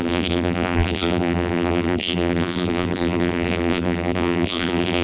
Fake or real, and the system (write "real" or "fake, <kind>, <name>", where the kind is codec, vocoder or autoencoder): fake, vocoder, BigVGAN v2